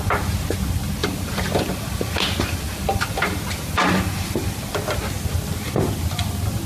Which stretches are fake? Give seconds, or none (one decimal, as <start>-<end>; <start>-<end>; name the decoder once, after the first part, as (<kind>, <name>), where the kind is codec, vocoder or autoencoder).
1.0-4.6 (vocoder, BigVGAN v2)